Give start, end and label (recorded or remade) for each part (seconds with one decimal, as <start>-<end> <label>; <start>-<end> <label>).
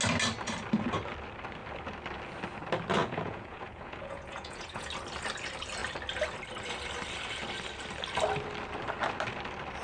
0.0-3.0 recorded; 3.0-4.9 remade; 4.9-9.8 recorded